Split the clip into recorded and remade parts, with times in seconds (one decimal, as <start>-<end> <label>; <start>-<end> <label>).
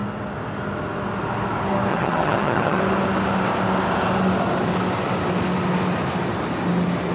0.0-1.9 recorded; 1.9-2.8 remade; 2.8-7.1 recorded